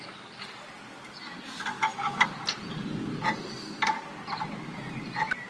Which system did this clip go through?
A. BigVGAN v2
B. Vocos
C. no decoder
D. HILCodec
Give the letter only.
C